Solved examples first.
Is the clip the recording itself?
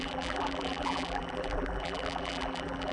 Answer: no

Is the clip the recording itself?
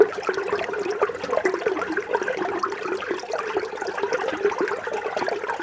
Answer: yes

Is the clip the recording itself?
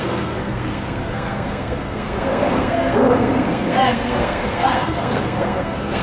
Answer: no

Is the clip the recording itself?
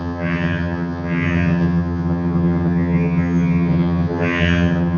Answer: no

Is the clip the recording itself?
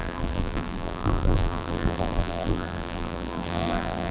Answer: no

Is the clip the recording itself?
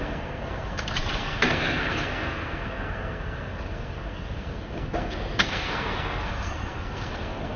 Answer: no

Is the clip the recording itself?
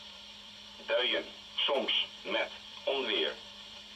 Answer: no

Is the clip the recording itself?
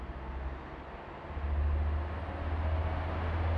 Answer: yes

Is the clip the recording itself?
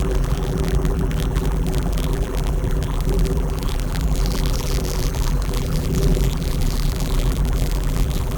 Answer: no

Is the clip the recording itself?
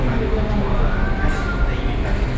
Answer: yes